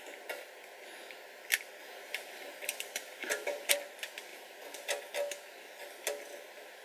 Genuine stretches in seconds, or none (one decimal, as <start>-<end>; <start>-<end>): 0.0-1.8; 3.7-4.3; 5.0-6.8